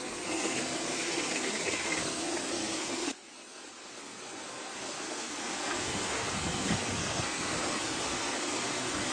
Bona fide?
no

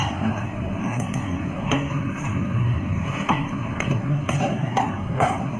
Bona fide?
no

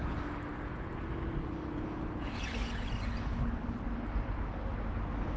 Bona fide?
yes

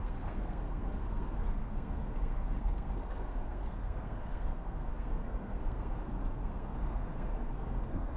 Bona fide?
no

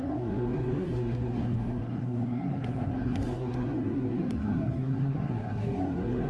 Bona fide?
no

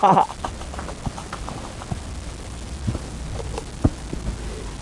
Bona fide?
yes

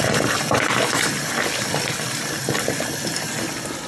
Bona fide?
yes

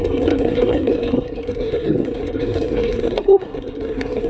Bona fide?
no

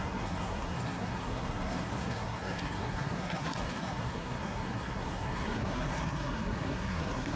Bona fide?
no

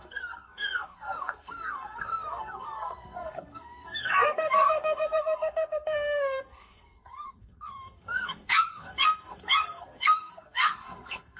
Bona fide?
no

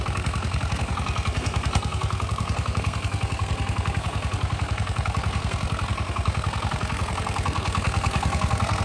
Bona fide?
no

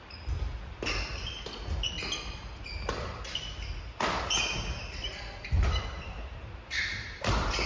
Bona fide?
yes